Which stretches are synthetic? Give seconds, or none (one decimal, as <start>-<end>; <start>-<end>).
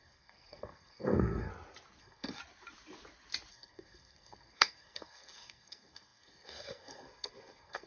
0.0-1.5; 2.0-2.4; 3.5-7.9